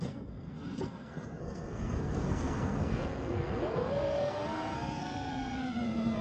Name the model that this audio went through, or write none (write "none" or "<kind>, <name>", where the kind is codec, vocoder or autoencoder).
codec, SNAC